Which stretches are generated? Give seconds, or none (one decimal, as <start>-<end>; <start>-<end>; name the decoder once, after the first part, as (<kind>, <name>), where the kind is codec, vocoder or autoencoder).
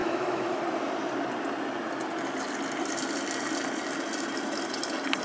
0.0-0.6 (autoencoder, DAC-VAE)